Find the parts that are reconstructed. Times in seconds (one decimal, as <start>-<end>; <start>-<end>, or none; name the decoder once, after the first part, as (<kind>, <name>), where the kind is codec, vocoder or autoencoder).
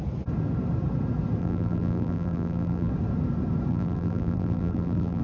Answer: 1.4-2.9 (vocoder, BigVGAN v2); 3.7-5.2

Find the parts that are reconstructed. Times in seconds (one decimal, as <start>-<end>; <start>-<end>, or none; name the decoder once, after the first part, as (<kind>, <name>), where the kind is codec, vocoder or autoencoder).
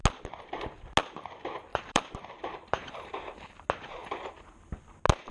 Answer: 1.7-3.5 (vocoder, BigVGAN v2); 4.0-4.8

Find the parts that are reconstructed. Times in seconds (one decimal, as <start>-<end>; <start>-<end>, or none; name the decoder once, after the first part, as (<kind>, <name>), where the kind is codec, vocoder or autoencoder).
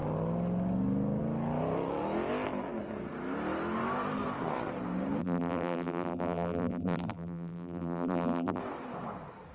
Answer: 5.2-8.6 (vocoder, BigVGAN v2)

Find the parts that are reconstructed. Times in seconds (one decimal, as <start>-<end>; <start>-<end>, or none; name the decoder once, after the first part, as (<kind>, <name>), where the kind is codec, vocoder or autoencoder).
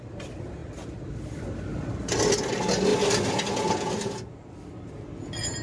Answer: none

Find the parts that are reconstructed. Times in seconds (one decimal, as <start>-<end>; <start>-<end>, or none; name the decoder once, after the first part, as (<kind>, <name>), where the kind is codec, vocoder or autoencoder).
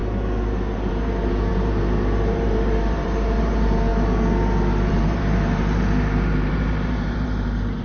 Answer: 0.0-3.9 (vocoder, BigVGAN v2); 4.9-7.8